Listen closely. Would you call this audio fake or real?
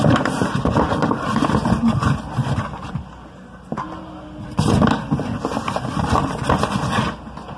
real